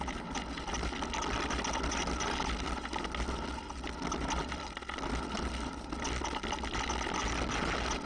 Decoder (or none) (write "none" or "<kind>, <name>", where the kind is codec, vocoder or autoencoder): none